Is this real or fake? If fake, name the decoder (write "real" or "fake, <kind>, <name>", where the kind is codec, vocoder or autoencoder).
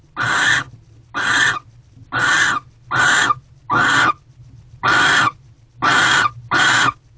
real